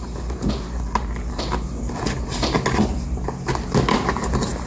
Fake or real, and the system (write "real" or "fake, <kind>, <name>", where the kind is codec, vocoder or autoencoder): real